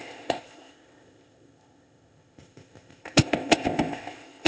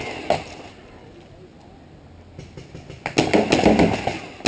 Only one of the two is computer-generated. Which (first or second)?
first